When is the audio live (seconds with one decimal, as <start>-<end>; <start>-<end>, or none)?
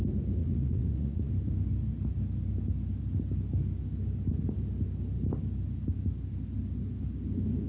0.0-0.4; 1.3-7.7